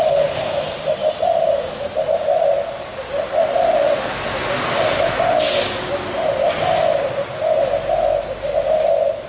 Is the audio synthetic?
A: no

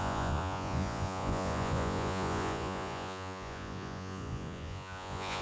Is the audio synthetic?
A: yes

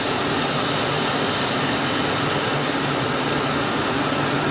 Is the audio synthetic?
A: no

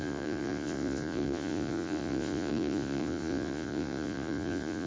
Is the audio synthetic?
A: yes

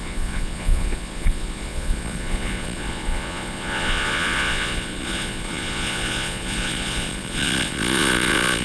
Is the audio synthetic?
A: yes